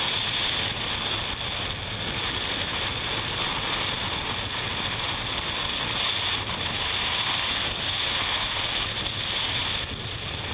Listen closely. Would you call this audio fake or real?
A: real